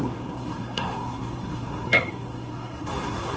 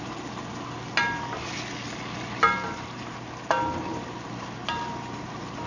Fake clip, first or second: first